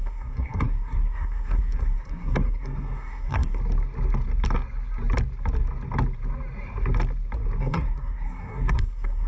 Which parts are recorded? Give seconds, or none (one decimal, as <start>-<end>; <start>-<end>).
3.6-7.6